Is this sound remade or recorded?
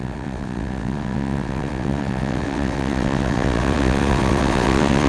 remade